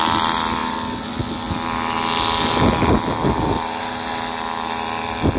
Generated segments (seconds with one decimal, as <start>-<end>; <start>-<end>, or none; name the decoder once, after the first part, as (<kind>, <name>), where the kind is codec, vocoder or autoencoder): none